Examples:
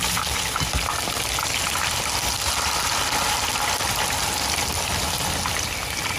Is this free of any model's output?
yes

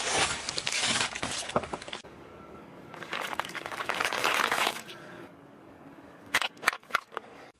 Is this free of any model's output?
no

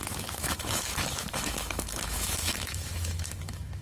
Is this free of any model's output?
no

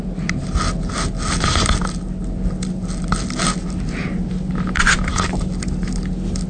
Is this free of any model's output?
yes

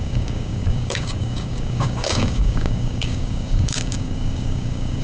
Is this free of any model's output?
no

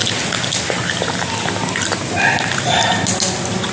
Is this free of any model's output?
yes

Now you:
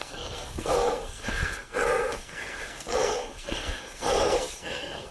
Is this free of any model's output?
no